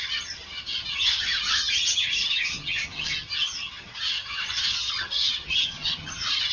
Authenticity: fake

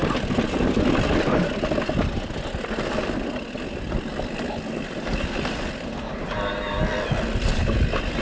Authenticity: real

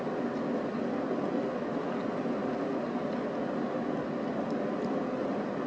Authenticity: real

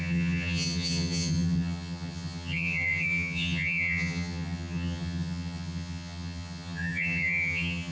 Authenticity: fake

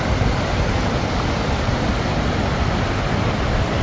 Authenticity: real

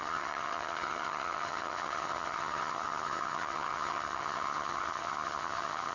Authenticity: fake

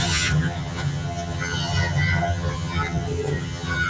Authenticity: fake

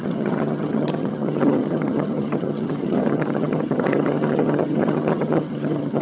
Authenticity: fake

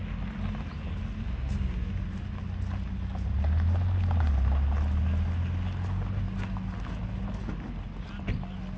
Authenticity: real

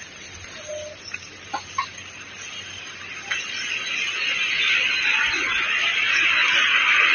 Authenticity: real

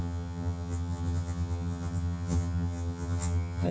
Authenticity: fake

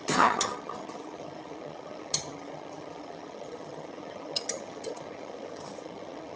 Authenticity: fake